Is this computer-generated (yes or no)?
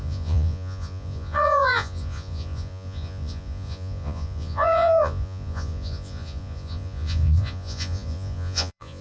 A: yes